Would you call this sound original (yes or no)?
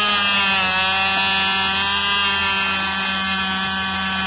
yes